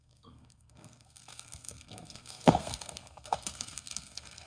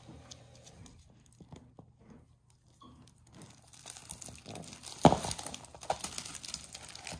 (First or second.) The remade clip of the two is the first